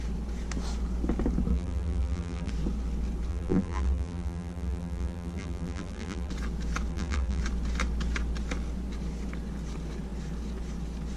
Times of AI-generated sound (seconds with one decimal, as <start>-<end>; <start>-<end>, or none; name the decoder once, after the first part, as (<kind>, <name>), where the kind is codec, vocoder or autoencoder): 1.5-2.5 (vocoder, BigVGAN v2); 3.3-6.3; 6.9-7.4